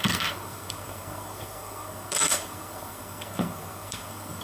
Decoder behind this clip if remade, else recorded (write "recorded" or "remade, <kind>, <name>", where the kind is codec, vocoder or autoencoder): remade, codec, SNAC